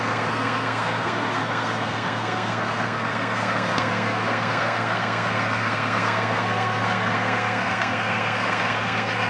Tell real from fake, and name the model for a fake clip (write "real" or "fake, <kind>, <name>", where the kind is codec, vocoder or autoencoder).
fake, codec, SNAC